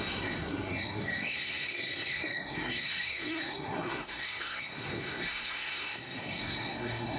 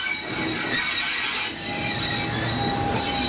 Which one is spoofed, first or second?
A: first